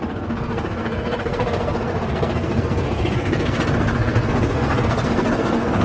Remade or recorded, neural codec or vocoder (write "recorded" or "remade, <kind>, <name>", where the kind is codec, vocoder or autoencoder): remade, codec, SNAC